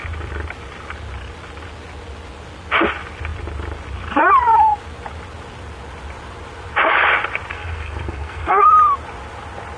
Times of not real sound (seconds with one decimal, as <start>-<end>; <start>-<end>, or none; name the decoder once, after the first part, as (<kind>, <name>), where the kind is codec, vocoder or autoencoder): 7.5-8.7 (codec, SNAC)